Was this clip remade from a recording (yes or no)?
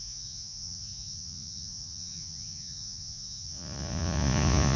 yes